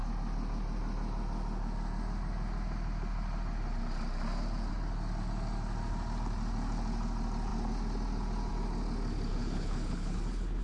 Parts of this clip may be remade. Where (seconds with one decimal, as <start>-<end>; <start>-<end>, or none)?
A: 9.3-10.6